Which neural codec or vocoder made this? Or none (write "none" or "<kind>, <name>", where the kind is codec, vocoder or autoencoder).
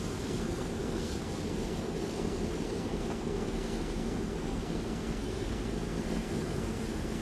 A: codec, SNAC